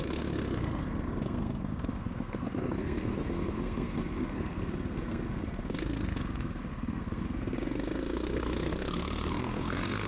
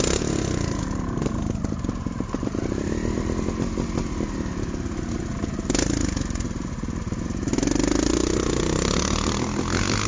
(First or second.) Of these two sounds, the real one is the second